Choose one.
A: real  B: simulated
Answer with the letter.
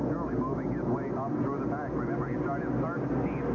A